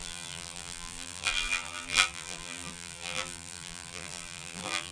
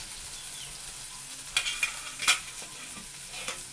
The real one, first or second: second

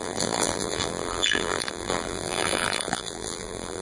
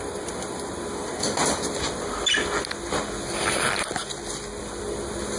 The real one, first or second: second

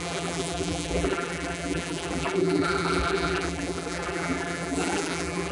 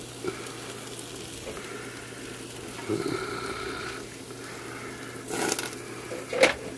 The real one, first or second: second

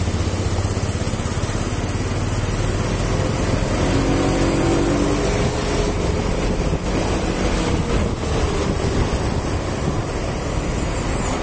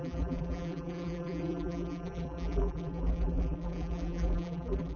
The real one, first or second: first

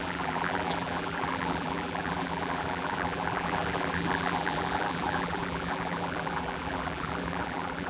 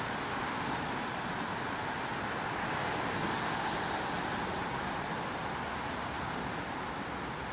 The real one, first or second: second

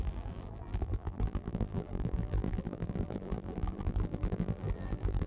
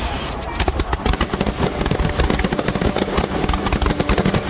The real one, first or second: second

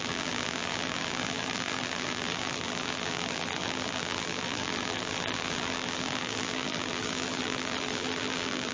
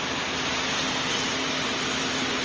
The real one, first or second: second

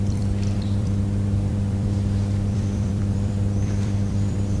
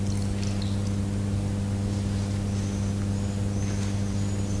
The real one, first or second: second